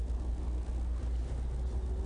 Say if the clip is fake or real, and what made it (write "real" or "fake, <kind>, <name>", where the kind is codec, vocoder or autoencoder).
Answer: real